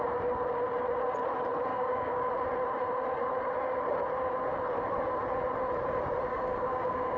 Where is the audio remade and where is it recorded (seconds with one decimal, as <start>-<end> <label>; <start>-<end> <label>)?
0.0-1.7 recorded; 1.7-2.3 remade; 2.3-6.3 recorded; 6.3-7.2 remade